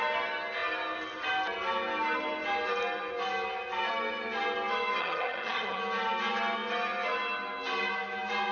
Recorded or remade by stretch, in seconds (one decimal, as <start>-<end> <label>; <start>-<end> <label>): 0.0-5.0 recorded; 5.0-5.8 remade; 5.8-8.5 recorded

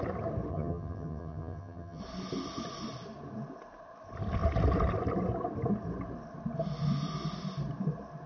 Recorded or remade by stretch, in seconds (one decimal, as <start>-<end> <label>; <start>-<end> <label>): 0.0-0.5 recorded; 0.5-2.0 remade; 2.0-8.3 recorded

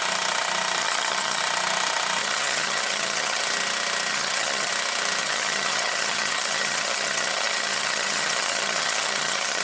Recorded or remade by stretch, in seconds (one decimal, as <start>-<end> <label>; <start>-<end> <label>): 0.0-0.8 recorded; 0.8-1.4 remade; 1.4-2.2 recorded; 2.2-3.4 remade; 3.4-4.1 recorded; 4.1-4.7 remade; 4.7-5.2 recorded; 5.2-9.6 remade

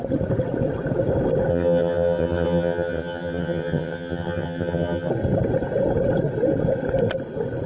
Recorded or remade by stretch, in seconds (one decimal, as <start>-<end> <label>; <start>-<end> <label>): 0.0-1.5 recorded; 1.5-5.1 remade; 5.1-7.7 recorded

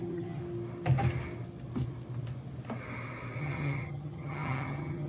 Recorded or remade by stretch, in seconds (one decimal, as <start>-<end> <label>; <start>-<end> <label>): 0.0-0.4 remade; 0.4-3.4 recorded; 3.4-5.1 remade